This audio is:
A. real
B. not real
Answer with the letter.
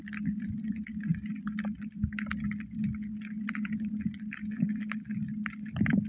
A